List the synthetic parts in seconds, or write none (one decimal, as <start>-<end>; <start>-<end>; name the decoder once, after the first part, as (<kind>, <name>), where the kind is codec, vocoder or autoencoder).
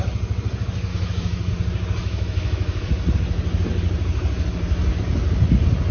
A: 0.9-1.5 (autoencoder, DAC-VAE); 2.0-2.9